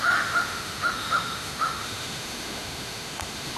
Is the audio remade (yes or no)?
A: yes